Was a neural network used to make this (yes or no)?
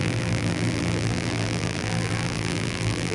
yes